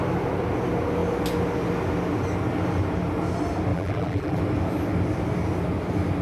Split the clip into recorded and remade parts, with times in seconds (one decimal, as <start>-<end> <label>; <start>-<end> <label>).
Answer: 0.0-3.7 recorded; 3.7-4.4 remade; 4.4-6.2 recorded